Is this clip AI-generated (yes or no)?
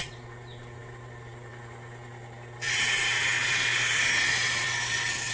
no